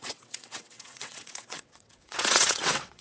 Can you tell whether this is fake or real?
fake